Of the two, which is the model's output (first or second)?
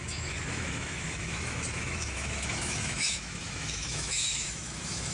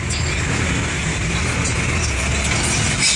first